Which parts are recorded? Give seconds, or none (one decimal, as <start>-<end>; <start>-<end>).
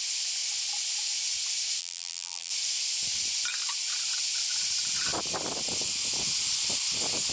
0.0-1.8; 2.5-7.3